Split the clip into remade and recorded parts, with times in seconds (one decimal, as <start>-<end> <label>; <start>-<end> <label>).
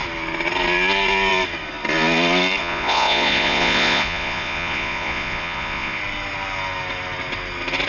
0.0-2.6 recorded; 2.6-6.0 remade; 6.0-7.9 recorded